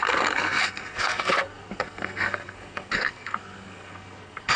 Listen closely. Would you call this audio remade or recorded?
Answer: remade